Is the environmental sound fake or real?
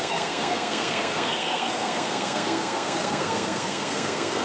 fake